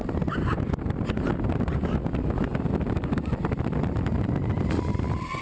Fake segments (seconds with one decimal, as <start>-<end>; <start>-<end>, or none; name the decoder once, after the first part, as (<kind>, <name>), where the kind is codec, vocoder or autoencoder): none